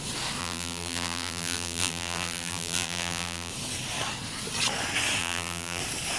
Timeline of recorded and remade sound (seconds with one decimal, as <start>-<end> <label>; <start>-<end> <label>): 0.0-0.4 recorded; 0.4-3.5 remade; 3.5-5.2 recorded; 5.2-5.8 remade; 5.8-6.2 recorded